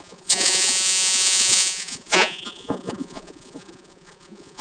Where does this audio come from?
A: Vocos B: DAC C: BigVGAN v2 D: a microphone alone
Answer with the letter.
A